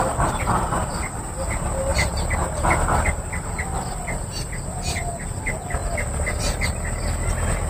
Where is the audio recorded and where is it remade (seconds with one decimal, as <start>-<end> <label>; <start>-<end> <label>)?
0.0-7.7 recorded